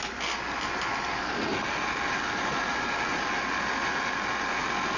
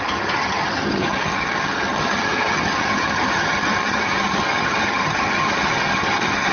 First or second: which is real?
first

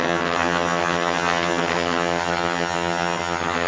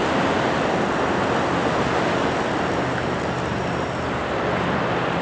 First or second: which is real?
second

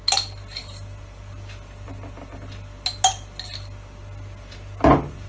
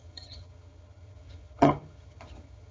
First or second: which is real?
first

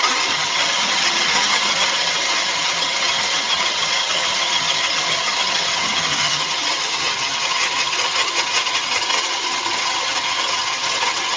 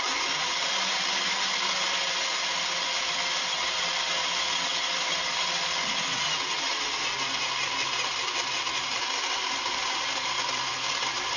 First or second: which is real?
second